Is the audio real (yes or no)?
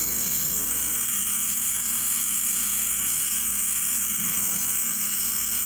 no